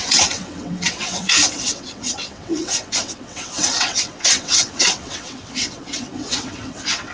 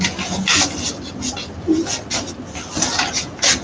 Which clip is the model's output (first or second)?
first